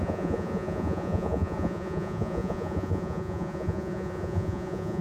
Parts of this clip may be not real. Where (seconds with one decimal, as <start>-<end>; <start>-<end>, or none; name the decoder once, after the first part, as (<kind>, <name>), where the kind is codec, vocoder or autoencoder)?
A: 0.0-5.0 (vocoder, Vocos)